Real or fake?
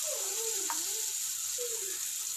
real